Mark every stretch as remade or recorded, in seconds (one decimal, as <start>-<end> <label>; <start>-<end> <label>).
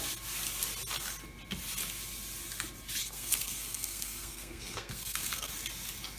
0.0-3.0 recorded; 3.0-5.5 remade; 5.5-6.2 recorded